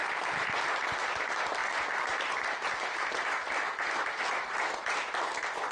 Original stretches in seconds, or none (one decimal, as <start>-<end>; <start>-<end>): 0.0-5.7

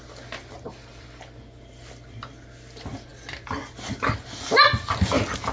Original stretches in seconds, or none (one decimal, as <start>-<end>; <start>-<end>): 0.0-5.5